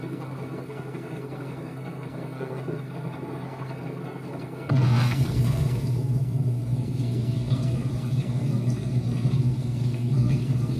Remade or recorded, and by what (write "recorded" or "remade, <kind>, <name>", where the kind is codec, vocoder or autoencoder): remade, codec, SNAC